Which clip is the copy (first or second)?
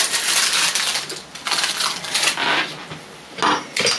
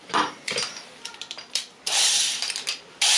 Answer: second